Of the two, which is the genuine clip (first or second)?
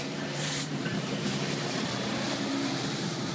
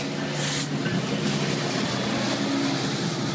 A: second